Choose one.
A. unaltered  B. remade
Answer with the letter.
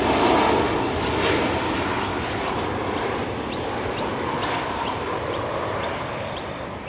A